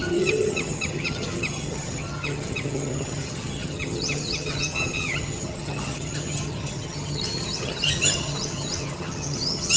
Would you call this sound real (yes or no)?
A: no